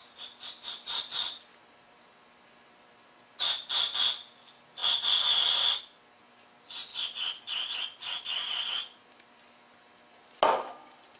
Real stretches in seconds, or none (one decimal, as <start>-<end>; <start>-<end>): 0.0-11.2